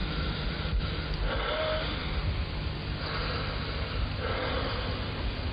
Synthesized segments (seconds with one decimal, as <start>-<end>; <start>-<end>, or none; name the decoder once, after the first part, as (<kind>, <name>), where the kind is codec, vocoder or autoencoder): none